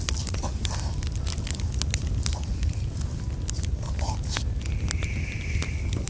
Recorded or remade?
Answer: recorded